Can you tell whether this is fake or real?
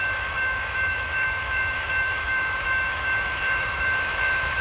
fake